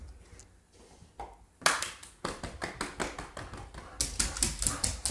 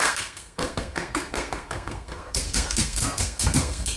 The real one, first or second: first